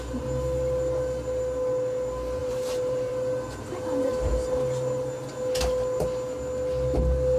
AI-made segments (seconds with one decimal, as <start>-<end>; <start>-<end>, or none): 2.4-3.1